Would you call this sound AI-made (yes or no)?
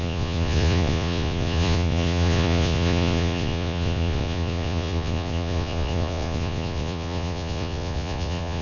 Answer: yes